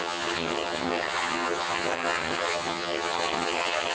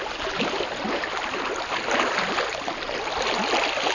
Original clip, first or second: second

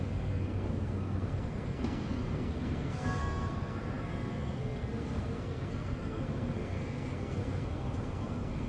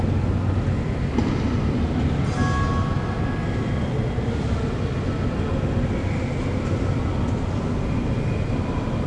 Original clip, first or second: second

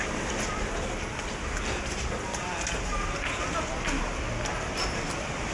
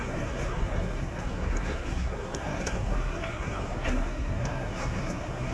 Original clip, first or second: first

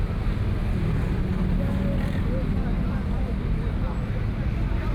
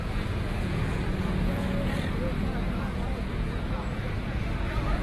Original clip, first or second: first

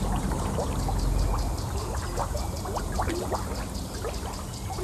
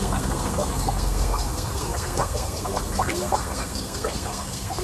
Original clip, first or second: first